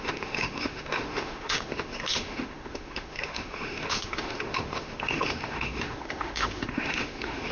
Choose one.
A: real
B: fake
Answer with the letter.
B